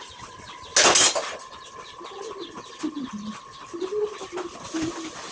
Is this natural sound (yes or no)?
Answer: yes